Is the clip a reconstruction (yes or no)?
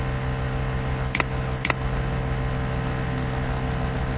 no